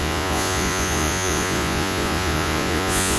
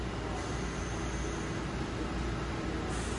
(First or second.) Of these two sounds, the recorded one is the second